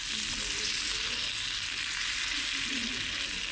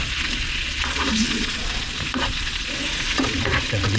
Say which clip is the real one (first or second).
first